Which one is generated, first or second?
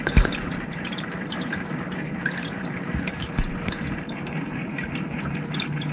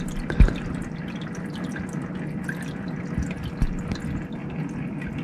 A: first